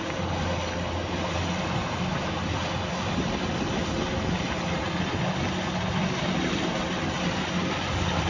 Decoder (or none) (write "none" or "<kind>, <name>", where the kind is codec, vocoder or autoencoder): none